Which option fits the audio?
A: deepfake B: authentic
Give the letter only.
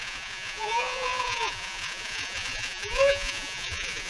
A